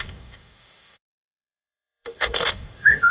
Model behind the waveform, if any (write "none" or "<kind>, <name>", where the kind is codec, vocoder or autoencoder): codec, DAC